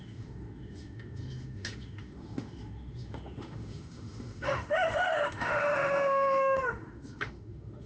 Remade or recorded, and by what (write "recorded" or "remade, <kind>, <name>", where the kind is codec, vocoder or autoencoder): remade, autoencoder, DAC-VAE